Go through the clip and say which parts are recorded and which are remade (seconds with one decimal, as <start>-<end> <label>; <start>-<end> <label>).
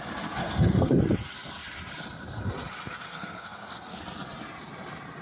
0.0-0.4 recorded; 0.4-1.0 remade; 1.0-3.1 recorded; 3.1-4.0 remade; 4.0-5.2 recorded